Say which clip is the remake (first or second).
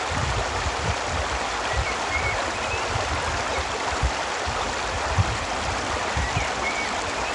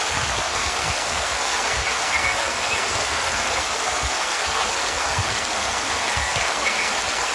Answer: second